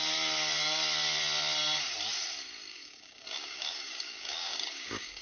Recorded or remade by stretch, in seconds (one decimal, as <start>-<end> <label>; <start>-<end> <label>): 0.0-2.7 recorded; 2.7-5.2 remade